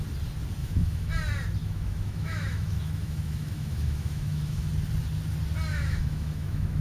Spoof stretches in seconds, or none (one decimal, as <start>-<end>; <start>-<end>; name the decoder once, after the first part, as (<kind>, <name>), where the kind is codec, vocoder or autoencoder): 0.6-1.1 (autoencoder, DAC-VAE); 1.6-4.7; 5.7-6.8